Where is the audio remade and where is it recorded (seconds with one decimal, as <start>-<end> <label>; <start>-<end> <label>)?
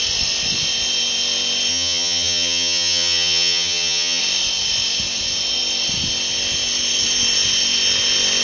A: 0.0-1.7 recorded; 1.7-4.2 remade; 4.2-8.4 recorded